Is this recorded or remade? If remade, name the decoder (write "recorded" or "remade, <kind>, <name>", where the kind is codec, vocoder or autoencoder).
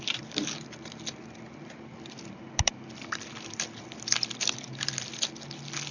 remade, vocoder, BigVGAN v2